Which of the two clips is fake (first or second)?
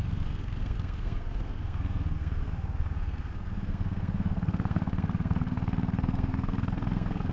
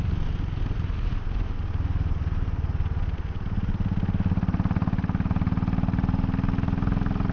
first